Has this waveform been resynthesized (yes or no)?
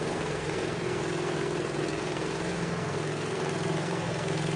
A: yes